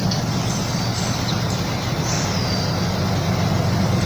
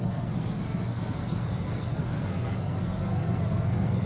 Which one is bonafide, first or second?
first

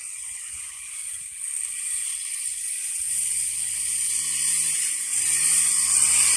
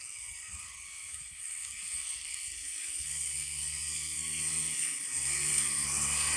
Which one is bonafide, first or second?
first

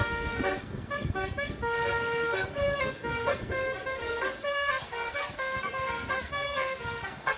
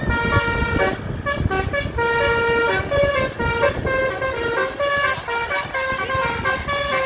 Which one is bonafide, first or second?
second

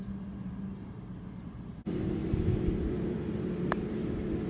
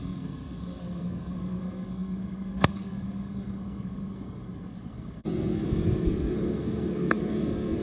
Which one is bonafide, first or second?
first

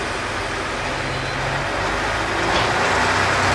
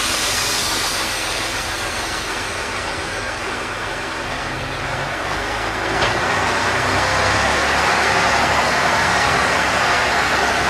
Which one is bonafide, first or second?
first